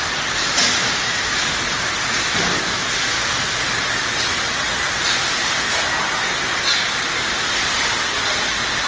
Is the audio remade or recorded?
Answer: recorded